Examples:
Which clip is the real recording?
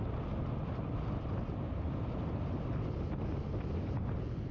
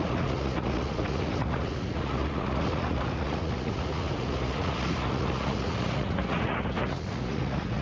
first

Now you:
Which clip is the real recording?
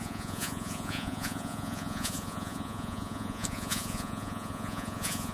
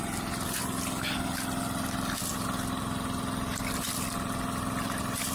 second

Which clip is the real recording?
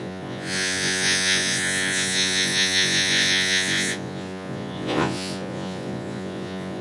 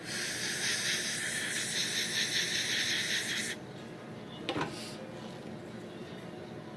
second